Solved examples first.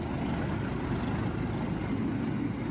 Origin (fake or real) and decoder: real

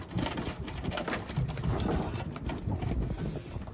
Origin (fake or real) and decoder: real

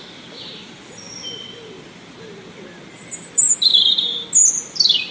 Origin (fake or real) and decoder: real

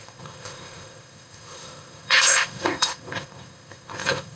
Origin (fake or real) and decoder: fake, codec, ZipCodec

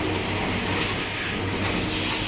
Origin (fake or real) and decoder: real